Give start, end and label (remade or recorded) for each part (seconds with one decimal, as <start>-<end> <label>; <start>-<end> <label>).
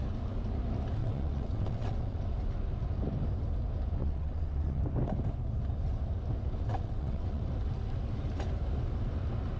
0.0-1.0 recorded; 1.0-2.2 remade; 2.2-4.0 recorded; 4.0-4.8 remade; 4.8-6.7 recorded; 6.7-7.4 remade; 7.4-9.6 recorded